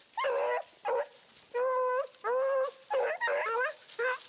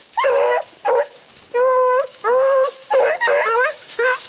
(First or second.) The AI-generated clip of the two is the second